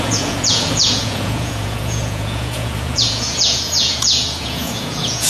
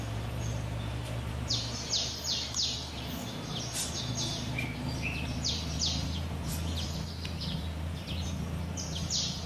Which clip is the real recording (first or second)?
second